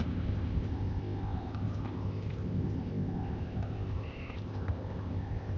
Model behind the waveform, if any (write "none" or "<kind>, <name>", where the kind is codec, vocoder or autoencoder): codec, ZipCodec